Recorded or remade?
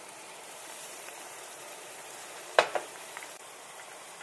remade